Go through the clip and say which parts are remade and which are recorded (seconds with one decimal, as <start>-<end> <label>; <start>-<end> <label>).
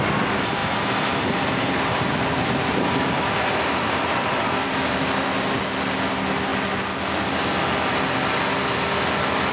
0.0-0.6 recorded; 0.6-4.8 remade; 4.8-9.5 recorded